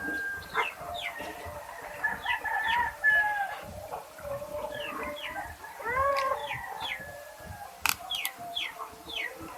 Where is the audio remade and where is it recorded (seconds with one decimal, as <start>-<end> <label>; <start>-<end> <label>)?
0.0-6.4 remade; 6.4-7.0 recorded; 7.0-9.6 remade